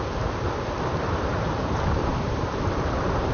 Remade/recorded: remade